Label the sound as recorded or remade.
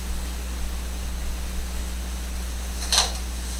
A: recorded